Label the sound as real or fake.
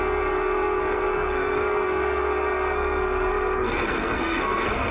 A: fake